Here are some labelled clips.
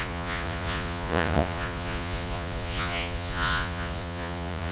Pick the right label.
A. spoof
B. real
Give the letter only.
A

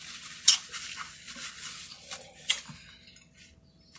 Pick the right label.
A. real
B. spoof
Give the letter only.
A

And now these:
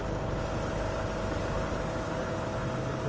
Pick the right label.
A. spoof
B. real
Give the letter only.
B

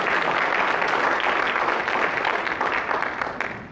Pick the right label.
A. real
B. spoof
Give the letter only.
A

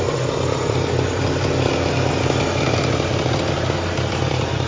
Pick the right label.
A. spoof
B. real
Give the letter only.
B